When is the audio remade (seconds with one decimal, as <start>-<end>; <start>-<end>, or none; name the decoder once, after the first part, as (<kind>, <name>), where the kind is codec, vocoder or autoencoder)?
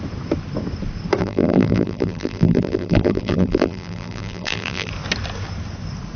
1.2-4.9 (vocoder, BigVGAN v2)